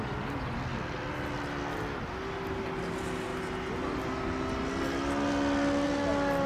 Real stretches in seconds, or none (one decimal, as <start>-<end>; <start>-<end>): 0.0-6.5